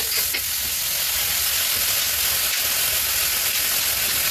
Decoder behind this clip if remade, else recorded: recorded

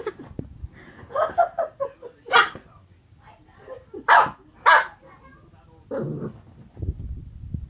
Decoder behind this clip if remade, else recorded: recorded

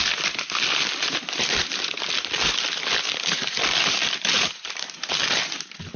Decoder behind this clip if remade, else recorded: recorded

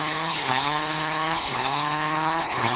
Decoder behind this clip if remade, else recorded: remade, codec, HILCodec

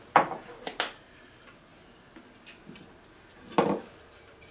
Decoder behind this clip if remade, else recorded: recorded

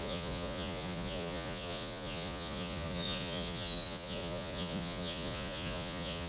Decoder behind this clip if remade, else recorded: remade, vocoder, Vocos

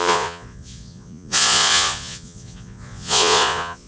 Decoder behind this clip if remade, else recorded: remade, vocoder, Vocos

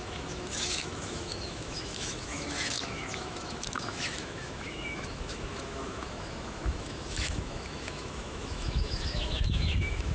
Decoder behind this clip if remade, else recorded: remade, autoencoder, DAC-VAE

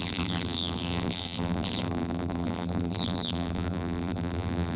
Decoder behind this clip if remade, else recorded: remade, vocoder, BigVGAN v2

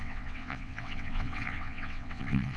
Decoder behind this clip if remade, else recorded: remade, vocoder, WaveNeXt